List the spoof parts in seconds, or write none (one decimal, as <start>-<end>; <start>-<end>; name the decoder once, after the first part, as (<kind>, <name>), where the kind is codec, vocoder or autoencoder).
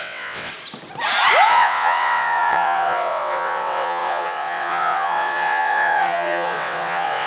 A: 0.0-0.5 (vocoder, WaveNeXt); 1.5-7.3